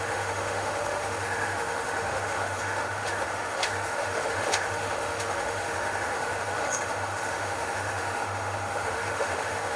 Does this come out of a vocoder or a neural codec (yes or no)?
yes